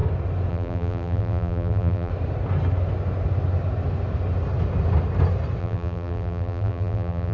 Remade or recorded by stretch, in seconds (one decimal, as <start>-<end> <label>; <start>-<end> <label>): 0.0-0.5 recorded; 0.5-2.1 remade; 2.1-5.6 recorded; 5.6-7.3 remade